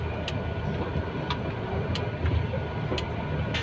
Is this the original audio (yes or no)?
yes